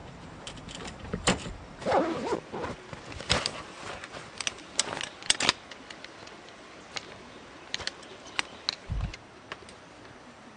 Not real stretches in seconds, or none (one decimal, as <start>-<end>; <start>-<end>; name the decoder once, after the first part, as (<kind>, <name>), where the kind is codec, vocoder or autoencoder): 0.0-2.0 (vocoder, BigVGAN v2); 3.5-4.1